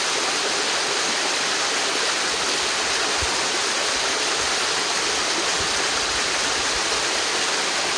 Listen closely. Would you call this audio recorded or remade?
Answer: recorded